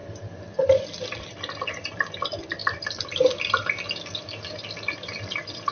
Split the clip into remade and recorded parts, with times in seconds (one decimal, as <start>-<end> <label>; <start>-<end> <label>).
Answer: 0.0-2.6 recorded; 2.6-3.7 remade; 3.7-5.7 recorded